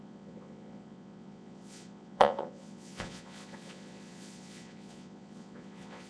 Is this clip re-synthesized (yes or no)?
yes